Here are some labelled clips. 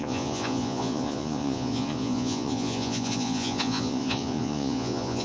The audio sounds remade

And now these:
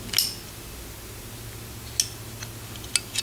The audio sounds recorded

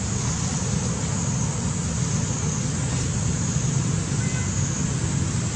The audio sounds recorded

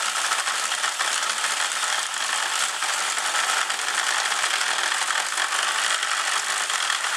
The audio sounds recorded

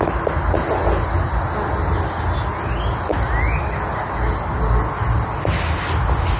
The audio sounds recorded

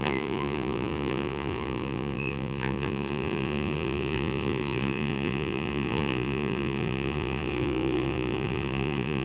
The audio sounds remade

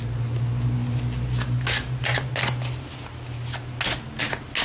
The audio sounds recorded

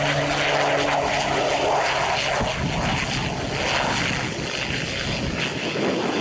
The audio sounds recorded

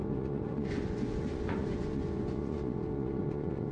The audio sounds remade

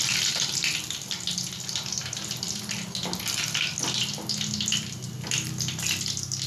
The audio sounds recorded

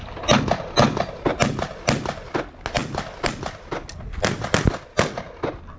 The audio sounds recorded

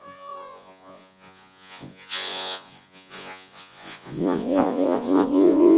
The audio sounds remade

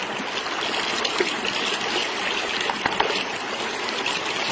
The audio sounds recorded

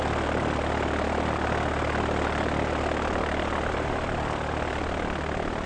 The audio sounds recorded